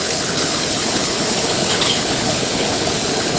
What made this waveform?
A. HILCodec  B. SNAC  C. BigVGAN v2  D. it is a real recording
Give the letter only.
A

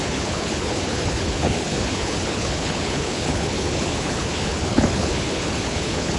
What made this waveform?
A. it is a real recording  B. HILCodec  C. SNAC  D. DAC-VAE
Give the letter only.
B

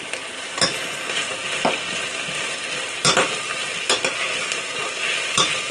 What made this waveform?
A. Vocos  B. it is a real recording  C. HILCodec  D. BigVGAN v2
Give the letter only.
B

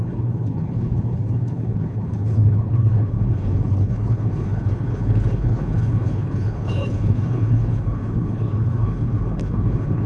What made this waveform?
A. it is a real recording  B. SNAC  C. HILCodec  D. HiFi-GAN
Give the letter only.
C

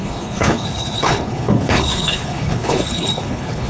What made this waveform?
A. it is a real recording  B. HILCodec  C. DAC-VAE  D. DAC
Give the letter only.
B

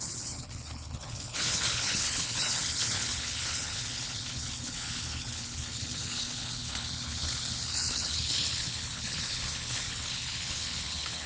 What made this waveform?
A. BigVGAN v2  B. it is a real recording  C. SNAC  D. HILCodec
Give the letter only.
D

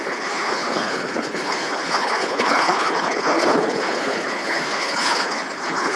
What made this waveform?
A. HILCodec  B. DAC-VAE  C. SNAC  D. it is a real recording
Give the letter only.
A